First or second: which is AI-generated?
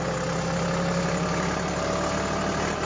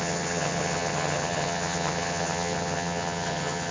second